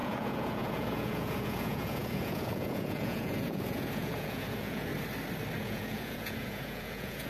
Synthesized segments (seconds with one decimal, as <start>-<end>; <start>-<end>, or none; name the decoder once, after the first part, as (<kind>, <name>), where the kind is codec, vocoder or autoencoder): 0.0-4.9 (vocoder, Vocos); 5.6-7.3